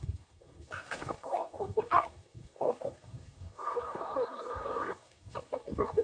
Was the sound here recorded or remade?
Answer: remade